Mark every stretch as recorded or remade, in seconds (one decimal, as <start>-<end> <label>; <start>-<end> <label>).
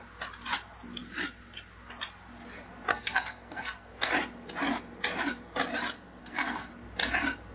0.0-2.9 recorded; 2.9-4.1 remade; 4.1-6.2 recorded; 6.2-6.7 remade; 6.7-7.5 recorded